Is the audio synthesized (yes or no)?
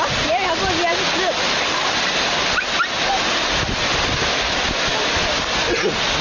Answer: no